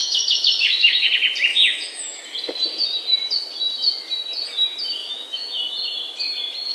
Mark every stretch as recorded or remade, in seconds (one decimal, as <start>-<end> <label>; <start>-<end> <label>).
0.0-1.1 remade; 1.1-1.5 recorded; 1.5-2.2 remade; 2.2-5.0 recorded; 5.0-5.7 remade; 5.7-6.7 recorded